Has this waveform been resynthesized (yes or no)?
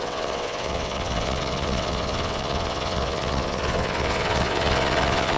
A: yes